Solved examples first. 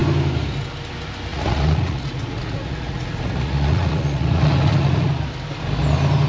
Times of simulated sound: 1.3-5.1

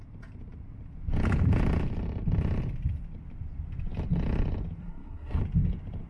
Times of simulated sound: 4.8-5.4

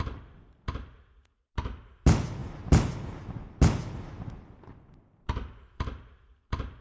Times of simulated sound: none

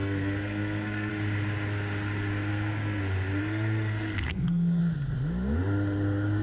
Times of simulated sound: 0.0-1.1; 2.5-3.0; 3.4-4.8

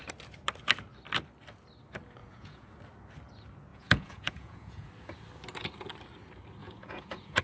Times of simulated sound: 2.2-2.7; 3.7-4.9; 6.6-7.4

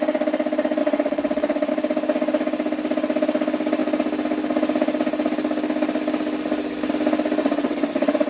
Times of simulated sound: 0.8-1.7; 7.4-8.3

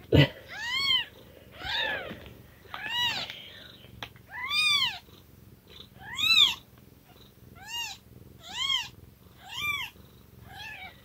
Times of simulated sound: none